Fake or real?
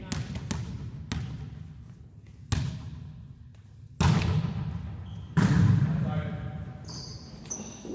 real